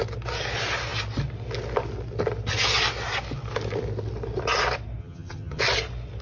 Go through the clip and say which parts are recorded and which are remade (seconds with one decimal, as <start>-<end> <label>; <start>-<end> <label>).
0.0-5.0 recorded; 5.0-5.6 remade; 5.6-6.2 recorded